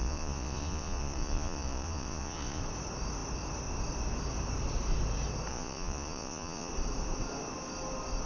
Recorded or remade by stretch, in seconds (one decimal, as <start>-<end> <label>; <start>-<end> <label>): 0.0-2.6 remade; 2.6-5.5 recorded; 5.5-6.7 remade; 6.7-8.3 recorded